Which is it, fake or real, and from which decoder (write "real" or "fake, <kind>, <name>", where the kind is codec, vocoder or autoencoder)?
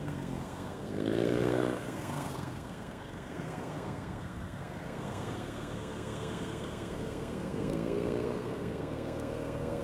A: fake, codec, SNAC